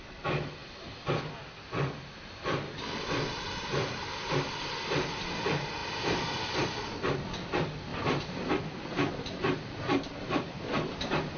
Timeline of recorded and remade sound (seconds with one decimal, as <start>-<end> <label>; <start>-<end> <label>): 0.0-7.9 recorded; 7.9-8.5 remade; 8.5-11.4 recorded